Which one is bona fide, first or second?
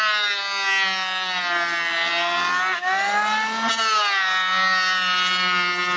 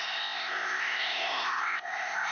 first